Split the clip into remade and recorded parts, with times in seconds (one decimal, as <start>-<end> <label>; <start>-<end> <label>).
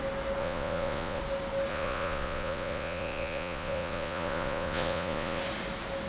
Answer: 0.0-0.4 recorded; 0.4-1.2 remade; 1.2-1.7 recorded; 1.7-5.4 remade; 5.4-6.1 recorded